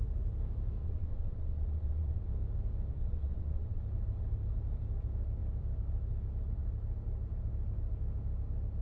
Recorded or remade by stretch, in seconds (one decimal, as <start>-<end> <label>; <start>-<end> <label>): 0.0-0.8 recorded; 0.8-2.3 remade; 2.3-2.9 recorded; 2.9-3.8 remade; 3.8-8.8 recorded